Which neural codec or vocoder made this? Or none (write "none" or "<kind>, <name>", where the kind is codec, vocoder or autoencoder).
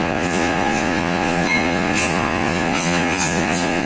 vocoder, Vocos